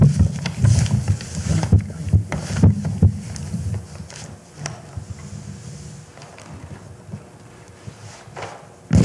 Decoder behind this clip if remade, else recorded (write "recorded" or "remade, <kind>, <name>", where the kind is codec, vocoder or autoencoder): recorded